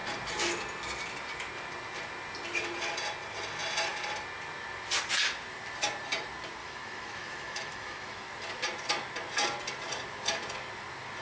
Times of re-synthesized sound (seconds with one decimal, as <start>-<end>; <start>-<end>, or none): 6.6-8.3